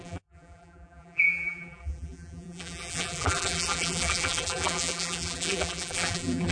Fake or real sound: fake